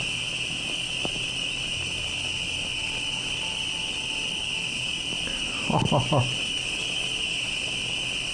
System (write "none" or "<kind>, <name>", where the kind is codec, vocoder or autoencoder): none